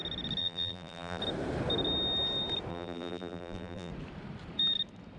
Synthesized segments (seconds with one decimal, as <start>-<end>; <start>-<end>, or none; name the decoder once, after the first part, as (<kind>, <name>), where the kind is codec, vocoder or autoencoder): 0.4-1.2 (vocoder, BigVGAN v2); 2.7-3.9

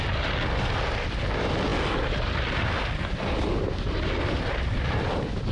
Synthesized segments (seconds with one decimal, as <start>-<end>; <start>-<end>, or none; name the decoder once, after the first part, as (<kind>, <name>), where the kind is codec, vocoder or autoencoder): none

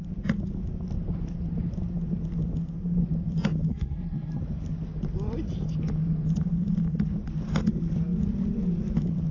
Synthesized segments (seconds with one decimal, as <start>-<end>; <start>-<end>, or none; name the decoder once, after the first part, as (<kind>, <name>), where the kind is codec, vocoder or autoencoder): 3.7-4.4 (codec, SNAC)

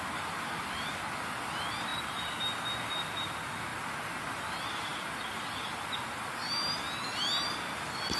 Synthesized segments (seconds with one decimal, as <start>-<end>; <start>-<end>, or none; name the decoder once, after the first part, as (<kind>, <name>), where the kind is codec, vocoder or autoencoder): 1.9-3.3 (vocoder, BigVGAN v2)

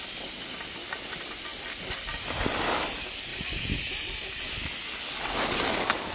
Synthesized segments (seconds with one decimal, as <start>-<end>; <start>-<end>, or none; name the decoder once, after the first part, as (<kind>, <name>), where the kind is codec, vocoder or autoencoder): none